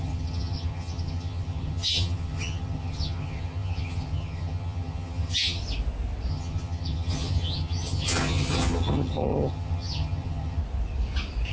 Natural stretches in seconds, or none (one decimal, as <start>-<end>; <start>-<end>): 5.6-6.3; 10.6-11.5